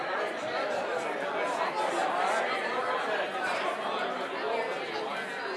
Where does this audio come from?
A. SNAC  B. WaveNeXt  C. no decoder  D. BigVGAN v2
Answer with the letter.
C